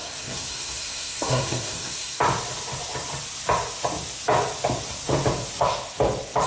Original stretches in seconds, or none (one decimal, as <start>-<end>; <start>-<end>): 2.2-6.5